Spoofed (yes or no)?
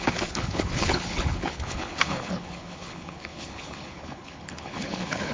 yes